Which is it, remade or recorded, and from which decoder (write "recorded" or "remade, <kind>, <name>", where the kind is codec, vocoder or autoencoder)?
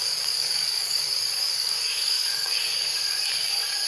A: remade, codec, DAC